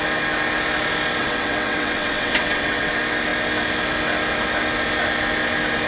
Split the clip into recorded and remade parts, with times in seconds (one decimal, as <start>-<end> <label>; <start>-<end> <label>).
0.0-1.2 recorded; 1.2-2.9 remade; 2.9-5.9 recorded